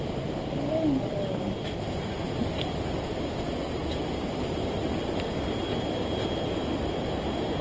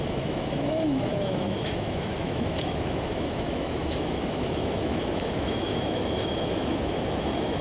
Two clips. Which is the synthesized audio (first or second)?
second